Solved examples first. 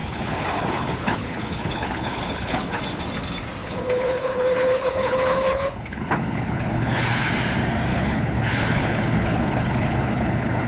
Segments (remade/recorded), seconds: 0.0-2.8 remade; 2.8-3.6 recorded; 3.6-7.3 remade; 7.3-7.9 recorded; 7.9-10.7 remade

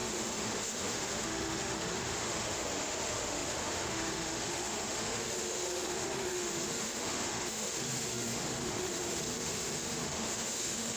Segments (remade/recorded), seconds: 0.0-11.0 remade

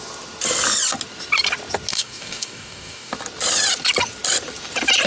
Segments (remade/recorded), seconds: 0.0-1.9 recorded; 1.9-3.1 remade; 3.1-5.1 recorded

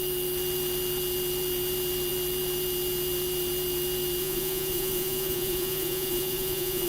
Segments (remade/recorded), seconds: 0.0-4.2 recorded; 4.2-6.9 remade

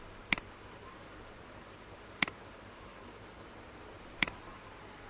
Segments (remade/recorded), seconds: 0.0-2.9 remade; 2.9-4.2 recorded; 4.2-5.1 remade

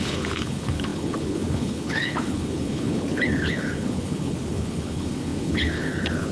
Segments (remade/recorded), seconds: 0.0-6.3 remade